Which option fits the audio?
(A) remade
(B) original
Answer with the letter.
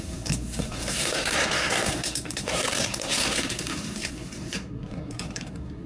A